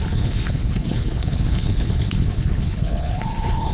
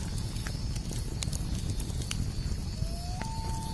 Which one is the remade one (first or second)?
first